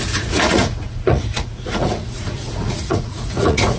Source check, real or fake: fake